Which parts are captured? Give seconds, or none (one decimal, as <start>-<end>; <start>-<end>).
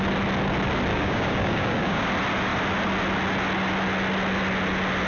0.0-0.9; 2.1-5.1